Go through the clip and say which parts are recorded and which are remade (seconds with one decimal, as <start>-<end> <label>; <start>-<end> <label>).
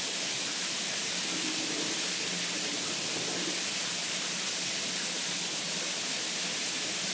0.0-7.1 recorded